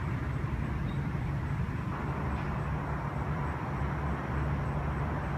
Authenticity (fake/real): real